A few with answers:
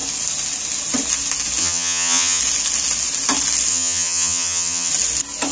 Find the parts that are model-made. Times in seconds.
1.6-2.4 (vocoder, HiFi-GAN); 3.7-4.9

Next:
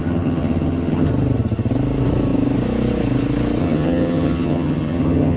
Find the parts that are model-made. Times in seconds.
0.0-1.1 (vocoder, HiFi-GAN); 3.6-5.4

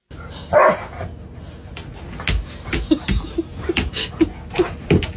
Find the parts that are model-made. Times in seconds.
none

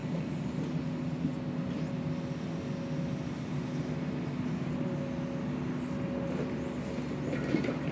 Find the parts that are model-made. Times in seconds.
none

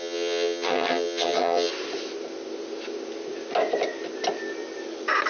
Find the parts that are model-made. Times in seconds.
0.0-1.7 (vocoder, HiFi-GAN)

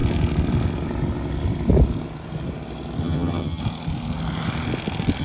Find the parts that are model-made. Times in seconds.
3.0-3.6 (vocoder, HiFi-GAN)